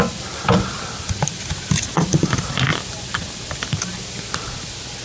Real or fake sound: real